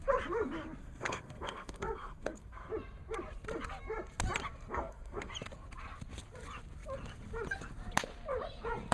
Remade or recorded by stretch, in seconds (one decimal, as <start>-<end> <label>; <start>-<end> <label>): 0.0-0.8 recorded; 0.8-2.7 remade; 2.7-4.7 recorded; 4.7-5.3 remade; 5.3-8.9 recorded

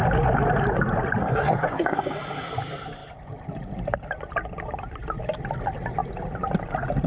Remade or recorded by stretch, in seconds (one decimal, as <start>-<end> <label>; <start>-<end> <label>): 0.0-1.2 recorded; 1.2-2.0 remade; 2.0-7.1 recorded

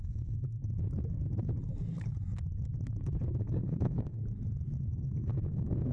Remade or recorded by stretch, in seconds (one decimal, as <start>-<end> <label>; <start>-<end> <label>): 0.0-0.6 remade; 0.6-3.4 recorded; 3.4-4.2 remade; 4.2-4.8 recorded; 4.8-5.9 remade

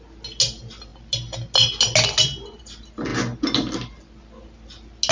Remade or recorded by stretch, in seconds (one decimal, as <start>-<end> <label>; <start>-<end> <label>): 0.0-5.1 recorded